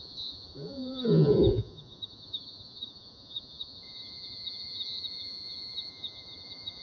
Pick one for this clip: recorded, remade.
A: remade